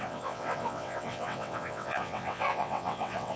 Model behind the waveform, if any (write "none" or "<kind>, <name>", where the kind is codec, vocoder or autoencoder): vocoder, WaveNeXt